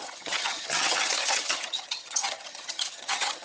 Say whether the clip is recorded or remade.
remade